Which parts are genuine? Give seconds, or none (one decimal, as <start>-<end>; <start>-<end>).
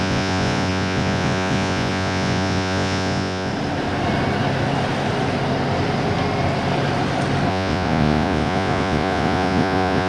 3.5-7.5